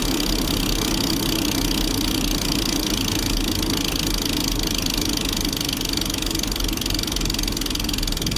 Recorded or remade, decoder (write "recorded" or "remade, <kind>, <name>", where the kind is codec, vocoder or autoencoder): recorded